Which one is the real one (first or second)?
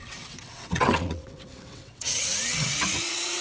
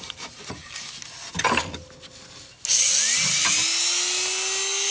second